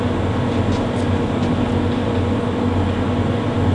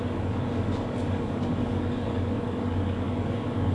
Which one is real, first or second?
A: first